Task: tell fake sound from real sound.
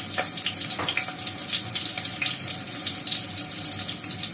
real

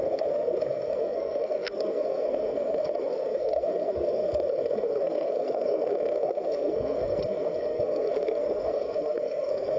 fake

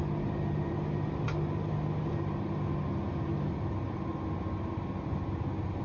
real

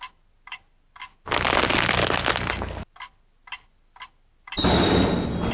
real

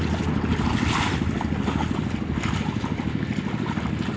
real